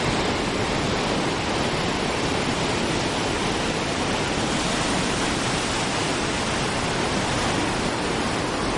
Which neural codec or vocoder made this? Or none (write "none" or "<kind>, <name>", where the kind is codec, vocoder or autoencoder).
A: none